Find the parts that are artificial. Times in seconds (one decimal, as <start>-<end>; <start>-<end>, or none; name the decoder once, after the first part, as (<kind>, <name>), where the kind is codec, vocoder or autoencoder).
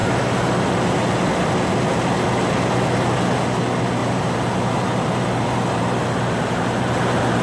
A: 0.0-0.5 (vocoder, BigVGAN v2); 4.0-7.4